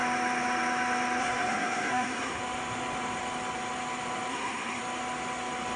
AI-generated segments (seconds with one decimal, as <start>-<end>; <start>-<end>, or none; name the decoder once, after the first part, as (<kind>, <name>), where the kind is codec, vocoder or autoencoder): 1.2-2.4 (codec, SNAC); 4.3-4.8